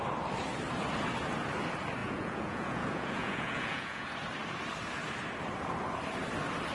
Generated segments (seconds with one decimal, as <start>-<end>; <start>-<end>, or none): 2.0-4.1